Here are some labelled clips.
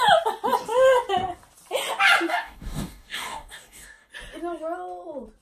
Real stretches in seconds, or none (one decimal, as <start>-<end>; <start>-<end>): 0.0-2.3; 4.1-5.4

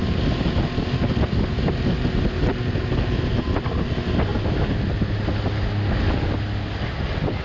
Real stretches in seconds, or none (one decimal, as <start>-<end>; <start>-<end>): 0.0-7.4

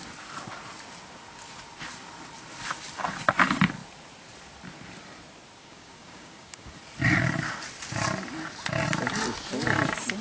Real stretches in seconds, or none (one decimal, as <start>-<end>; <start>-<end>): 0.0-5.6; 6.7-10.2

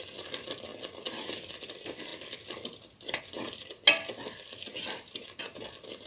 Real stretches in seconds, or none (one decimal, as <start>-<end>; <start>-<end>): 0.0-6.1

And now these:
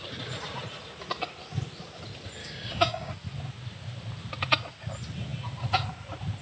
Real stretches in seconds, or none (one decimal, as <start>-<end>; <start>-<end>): 0.0-2.4; 3.1-6.4

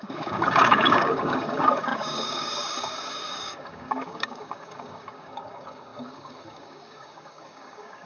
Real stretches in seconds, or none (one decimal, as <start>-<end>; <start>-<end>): none

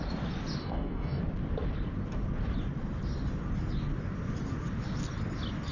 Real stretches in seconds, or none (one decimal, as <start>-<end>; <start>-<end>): 0.0-0.6; 1.2-5.7

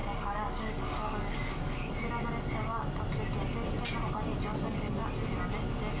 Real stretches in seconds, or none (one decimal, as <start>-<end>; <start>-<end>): 1.9-6.0